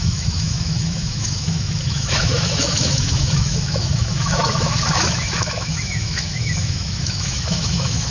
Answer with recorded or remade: remade